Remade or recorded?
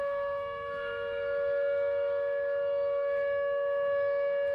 remade